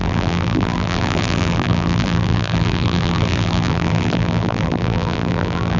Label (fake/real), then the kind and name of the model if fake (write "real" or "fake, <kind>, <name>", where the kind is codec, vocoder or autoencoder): fake, vocoder, BigVGAN v2